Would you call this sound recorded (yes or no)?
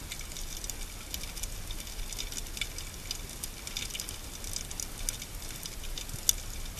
yes